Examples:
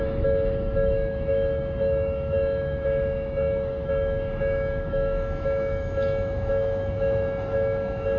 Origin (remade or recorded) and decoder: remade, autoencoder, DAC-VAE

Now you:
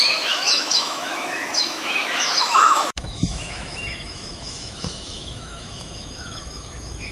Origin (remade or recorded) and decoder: remade, autoencoder, DAC-VAE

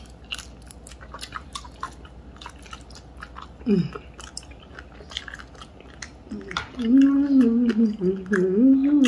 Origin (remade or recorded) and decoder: recorded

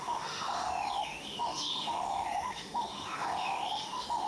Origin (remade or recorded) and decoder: remade, autoencoder, DAC-VAE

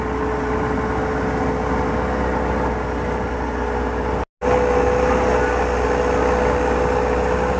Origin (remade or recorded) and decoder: recorded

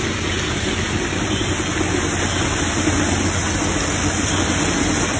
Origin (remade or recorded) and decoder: recorded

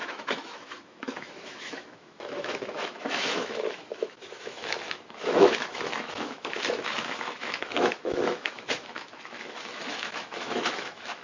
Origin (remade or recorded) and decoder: remade, autoencoder, DAC-VAE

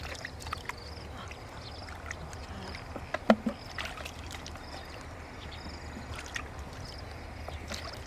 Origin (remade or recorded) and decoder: recorded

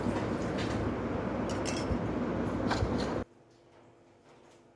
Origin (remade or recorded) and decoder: recorded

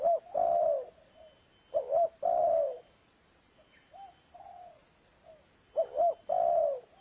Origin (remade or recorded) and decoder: recorded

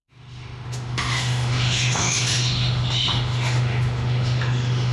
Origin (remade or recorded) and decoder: remade, autoencoder, DAC-VAE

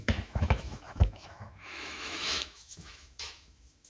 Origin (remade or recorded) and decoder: remade, autoencoder, DAC-VAE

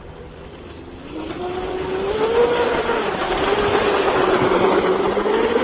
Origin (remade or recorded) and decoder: recorded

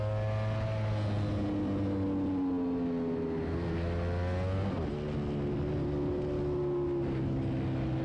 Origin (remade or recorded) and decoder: recorded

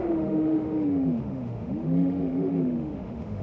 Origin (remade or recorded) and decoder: remade, autoencoder, DAC-VAE